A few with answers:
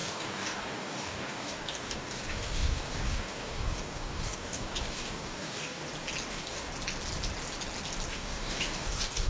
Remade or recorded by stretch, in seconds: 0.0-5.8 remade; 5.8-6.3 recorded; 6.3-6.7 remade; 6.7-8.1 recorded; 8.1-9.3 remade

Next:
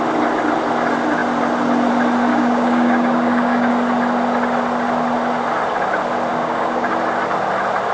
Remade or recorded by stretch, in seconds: 0.0-2.3 recorded; 2.3-3.7 remade; 3.7-6.3 recorded; 6.3-6.9 remade; 6.9-7.9 recorded

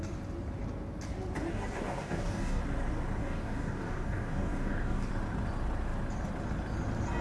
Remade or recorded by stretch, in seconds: 0.0-1.5 recorded; 1.5-2.6 remade; 2.6-3.2 recorded; 3.2-5.1 remade; 5.1-7.2 recorded

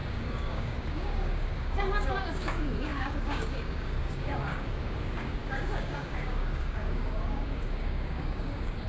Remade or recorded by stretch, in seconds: 0.0-8.9 remade